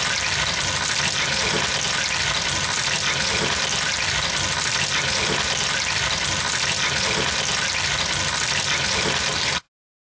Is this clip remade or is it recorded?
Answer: recorded